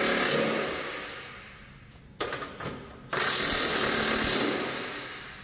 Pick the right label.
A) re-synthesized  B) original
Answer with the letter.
B